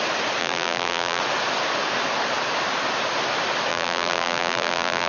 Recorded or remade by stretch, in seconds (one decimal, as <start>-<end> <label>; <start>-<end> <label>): 0.0-0.4 recorded; 0.4-1.2 remade; 1.2-3.7 recorded; 3.7-5.1 remade